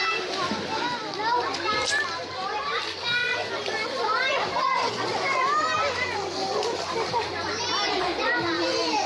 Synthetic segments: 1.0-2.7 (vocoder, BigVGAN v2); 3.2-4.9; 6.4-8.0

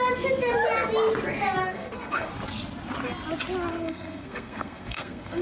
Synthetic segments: 1.6-2.3 (codec, SNAC); 3.7-5.4

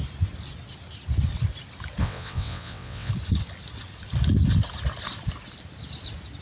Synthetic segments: 2.0-3.1 (vocoder, WaveNeXt)

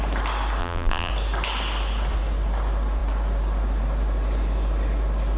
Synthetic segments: 0.6-1.1 (vocoder, BigVGAN v2)

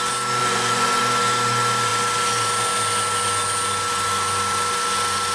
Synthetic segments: 0.4-1.0 (vocoder, Vocos)